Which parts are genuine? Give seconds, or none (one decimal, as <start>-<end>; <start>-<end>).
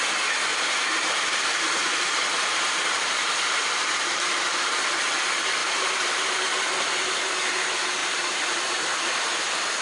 0.0-0.5; 4.7-5.6; 6.3-8.0; 8.6-9.8